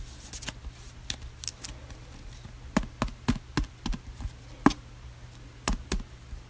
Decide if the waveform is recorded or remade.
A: recorded